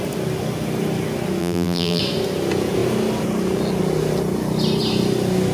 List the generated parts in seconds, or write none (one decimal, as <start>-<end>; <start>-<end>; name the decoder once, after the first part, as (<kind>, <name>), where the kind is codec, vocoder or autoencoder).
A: 1.4-2.0 (vocoder, BigVGAN v2)